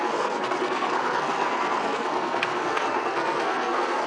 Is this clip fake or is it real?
fake